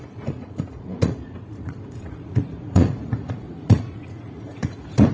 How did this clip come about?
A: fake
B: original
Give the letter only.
A